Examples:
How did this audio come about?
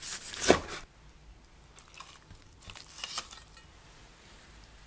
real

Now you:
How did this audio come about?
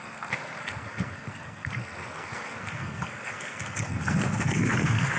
fake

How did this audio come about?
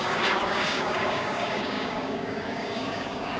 fake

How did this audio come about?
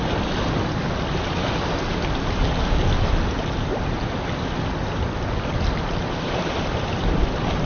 real